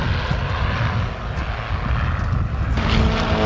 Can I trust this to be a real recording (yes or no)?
yes